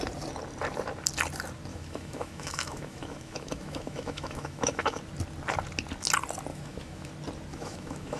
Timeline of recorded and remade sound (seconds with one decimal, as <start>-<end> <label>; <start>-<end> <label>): 0.0-1.7 recorded; 1.7-5.0 remade; 5.0-6.5 recorded; 6.5-7.1 remade; 7.1-7.5 recorded; 7.5-8.2 remade